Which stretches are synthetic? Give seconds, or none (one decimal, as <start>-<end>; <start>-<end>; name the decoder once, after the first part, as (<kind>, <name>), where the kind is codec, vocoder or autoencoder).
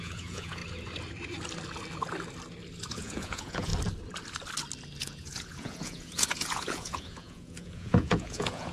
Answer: 0.0-0.6 (vocoder, Vocos); 2.9-3.7; 5.0-8.7